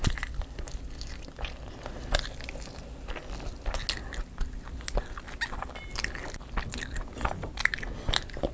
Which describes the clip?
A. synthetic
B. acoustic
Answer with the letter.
B